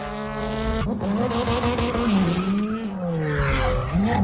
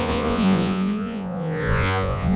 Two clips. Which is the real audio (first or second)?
first